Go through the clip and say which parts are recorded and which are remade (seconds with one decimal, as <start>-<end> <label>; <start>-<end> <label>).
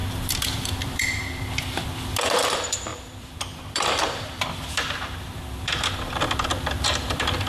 0.0-7.5 remade